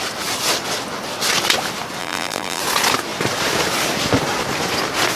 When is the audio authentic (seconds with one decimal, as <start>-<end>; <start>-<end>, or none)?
0.0-2.0; 2.6-5.2